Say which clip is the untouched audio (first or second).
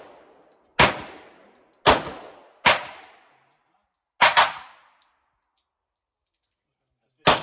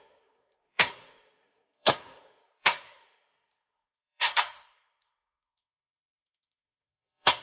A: first